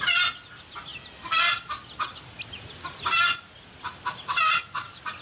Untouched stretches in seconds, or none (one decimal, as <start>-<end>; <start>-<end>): 0.0-5.2